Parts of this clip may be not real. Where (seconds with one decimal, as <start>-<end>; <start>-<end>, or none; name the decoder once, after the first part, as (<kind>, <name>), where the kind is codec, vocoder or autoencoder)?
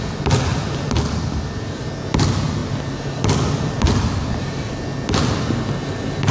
2.6-3.7 (vocoder, BigVGAN v2)